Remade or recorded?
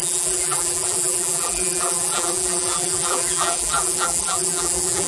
remade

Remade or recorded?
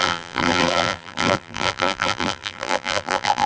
remade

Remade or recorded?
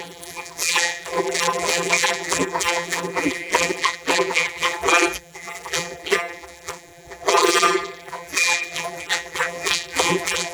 remade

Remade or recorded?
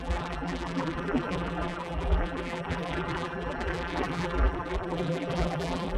remade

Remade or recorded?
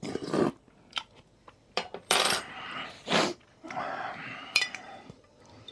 remade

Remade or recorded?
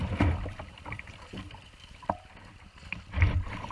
remade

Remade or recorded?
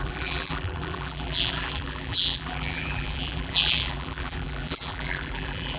remade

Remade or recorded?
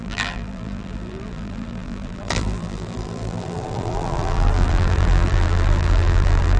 remade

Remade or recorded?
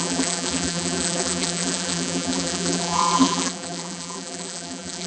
remade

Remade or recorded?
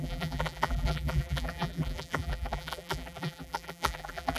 remade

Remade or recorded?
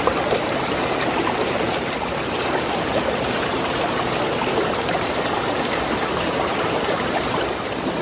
remade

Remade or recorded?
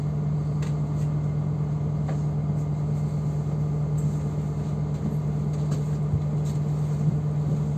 recorded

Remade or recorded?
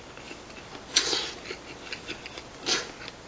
remade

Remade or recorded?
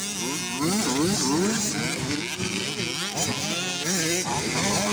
recorded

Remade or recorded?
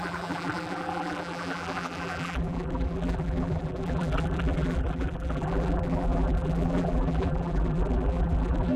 remade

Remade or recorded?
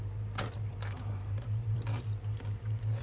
remade